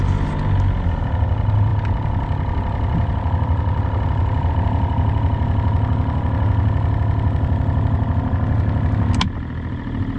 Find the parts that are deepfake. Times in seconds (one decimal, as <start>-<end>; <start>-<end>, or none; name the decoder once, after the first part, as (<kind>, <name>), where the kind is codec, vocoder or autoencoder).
none